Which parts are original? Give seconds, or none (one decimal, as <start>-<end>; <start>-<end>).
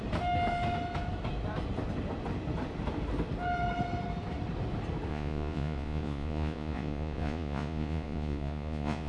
0.0-5.1